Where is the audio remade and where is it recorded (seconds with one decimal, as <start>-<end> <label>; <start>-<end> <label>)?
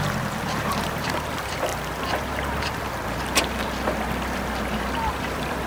0.0-1.7 remade; 1.7-5.1 recorded; 5.1-5.7 remade